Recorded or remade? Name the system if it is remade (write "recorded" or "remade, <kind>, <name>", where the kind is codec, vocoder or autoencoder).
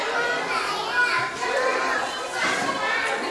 recorded